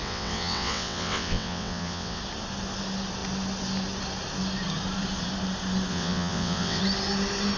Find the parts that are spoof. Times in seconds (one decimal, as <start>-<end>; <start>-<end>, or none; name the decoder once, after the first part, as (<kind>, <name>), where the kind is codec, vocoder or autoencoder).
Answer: 0.0-2.2 (vocoder, WaveNeXt); 5.9-6.8